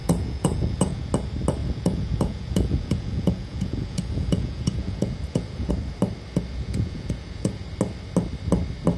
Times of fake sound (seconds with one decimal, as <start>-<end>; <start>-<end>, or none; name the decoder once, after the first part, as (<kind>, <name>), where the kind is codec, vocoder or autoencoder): 0.0-1.1 (vocoder, Vocos); 1.6-5.7; 6.5-7.7